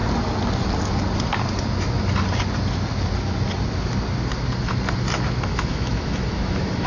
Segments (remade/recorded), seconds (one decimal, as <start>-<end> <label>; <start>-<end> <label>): 0.0-5.5 recorded; 5.5-6.9 remade